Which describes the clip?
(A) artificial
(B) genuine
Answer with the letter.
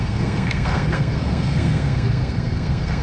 A